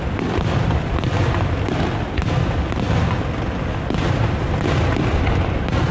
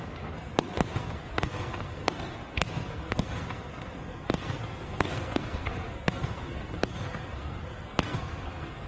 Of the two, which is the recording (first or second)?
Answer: first